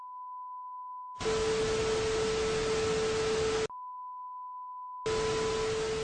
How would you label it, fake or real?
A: real